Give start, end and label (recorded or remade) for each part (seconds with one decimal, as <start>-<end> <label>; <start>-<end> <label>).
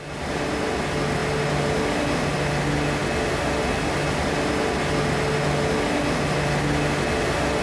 0.0-7.6 recorded